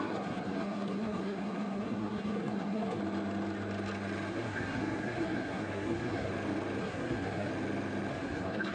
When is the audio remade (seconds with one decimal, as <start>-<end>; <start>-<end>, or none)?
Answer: 0.0-3.0; 4.3-6.3; 6.8-7.5; 8.1-8.7